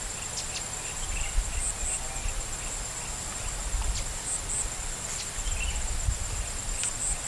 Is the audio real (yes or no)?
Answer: yes